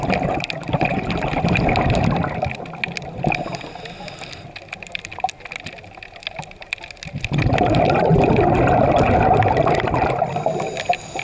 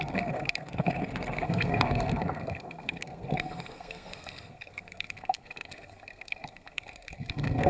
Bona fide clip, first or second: first